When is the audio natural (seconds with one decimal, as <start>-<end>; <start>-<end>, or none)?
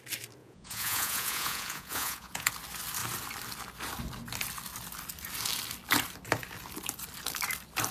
0.0-0.4; 2.5-7.9